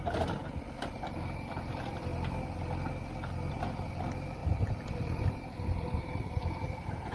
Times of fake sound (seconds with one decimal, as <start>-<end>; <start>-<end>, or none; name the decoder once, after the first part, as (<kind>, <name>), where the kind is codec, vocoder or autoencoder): 0.0-0.4 (vocoder, BigVGAN v2); 0.9-2.1; 3.5-7.1